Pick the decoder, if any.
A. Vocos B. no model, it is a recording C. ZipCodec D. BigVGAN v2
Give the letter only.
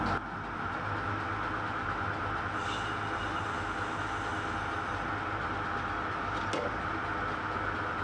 B